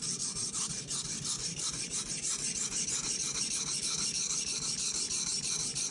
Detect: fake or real fake